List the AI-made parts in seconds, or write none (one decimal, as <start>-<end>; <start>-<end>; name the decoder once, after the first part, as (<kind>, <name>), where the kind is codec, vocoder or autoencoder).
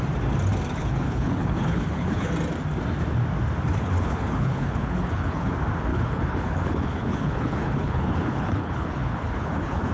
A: 0.8-2.3 (codec, HILCodec); 3.7-5.5; 5.9-9.9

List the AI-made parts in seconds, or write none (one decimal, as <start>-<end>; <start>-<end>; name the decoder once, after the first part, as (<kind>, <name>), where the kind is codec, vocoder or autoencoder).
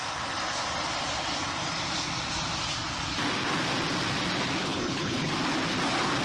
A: 4.6-5.3 (codec, HILCodec)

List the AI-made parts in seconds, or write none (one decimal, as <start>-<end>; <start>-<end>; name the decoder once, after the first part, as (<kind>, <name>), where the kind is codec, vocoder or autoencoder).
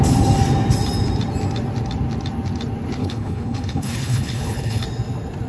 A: 3.0-4.8 (codec, HILCodec)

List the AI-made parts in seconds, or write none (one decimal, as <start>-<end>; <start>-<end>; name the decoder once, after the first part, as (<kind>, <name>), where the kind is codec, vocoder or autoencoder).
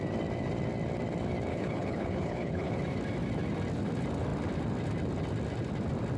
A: 1.5-2.7 (codec, HILCodec)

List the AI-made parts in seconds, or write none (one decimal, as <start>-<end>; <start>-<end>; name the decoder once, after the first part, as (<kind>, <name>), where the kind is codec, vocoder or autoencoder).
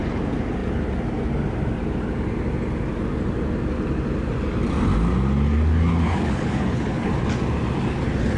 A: 5.9-7.1 (codec, HILCodec)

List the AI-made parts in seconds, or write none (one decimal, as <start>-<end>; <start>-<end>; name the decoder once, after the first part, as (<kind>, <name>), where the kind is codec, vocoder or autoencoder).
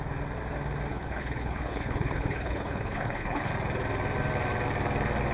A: 0.9-3.5 (codec, HILCodec)